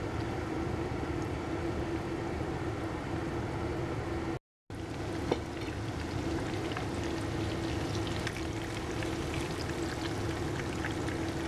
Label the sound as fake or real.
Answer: real